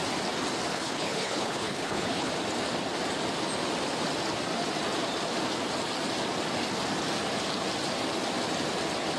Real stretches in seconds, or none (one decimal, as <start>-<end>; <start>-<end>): 0.0-0.7; 2.3-9.2